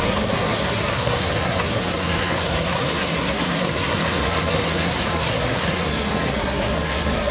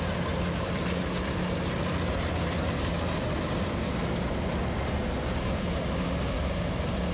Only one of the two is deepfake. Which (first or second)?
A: first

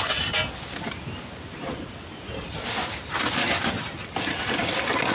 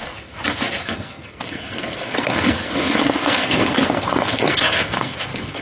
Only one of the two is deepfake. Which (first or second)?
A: second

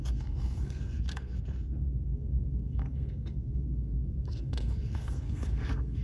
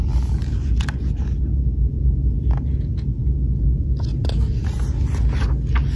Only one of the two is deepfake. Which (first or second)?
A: first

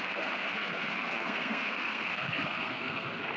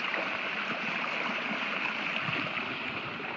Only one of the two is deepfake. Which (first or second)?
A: first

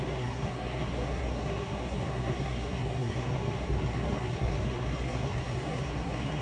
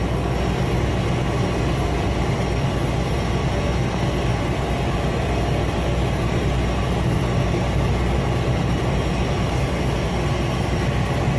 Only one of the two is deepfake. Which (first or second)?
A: first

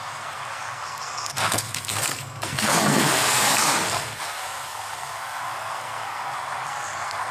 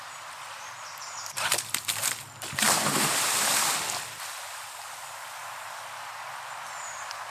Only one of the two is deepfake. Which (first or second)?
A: first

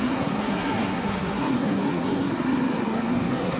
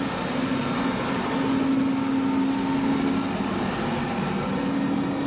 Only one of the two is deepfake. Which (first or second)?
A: first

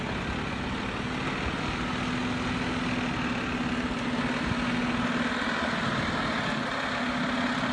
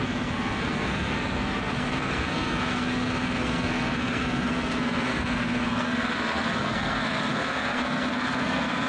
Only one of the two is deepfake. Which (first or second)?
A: second